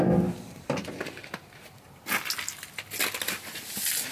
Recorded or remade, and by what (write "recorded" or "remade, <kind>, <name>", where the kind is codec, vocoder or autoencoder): recorded